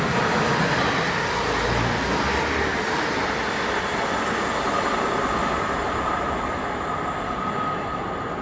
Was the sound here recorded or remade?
recorded